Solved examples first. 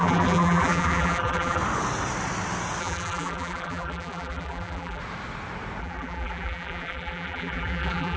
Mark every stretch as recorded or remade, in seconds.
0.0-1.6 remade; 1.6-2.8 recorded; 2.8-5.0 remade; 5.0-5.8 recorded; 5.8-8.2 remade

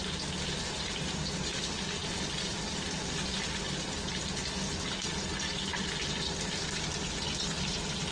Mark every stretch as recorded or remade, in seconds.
0.0-2.0 recorded; 2.0-3.4 remade; 3.4-8.1 recorded

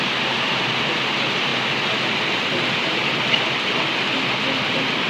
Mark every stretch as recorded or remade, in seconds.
0.0-1.5 remade; 1.5-4.6 recorded; 4.6-5.1 remade

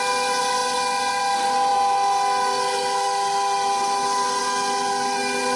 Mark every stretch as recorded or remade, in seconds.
0.0-5.6 recorded